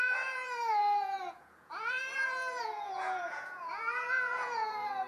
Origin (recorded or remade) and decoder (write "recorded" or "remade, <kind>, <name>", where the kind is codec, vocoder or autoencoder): remade, vocoder, Vocos